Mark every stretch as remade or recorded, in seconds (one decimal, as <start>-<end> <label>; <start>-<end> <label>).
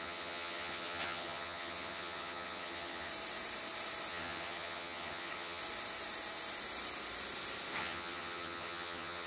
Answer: 0.0-3.1 remade; 3.1-4.1 recorded; 4.1-5.6 remade; 5.6-7.8 recorded; 7.8-9.3 remade